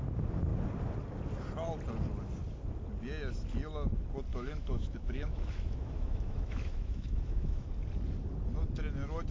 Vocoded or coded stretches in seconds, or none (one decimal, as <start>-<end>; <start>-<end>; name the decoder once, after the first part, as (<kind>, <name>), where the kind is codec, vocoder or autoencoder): 4.3-7.7 (autoencoder, DAC-VAE)